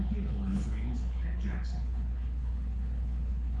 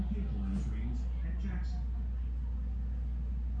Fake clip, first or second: first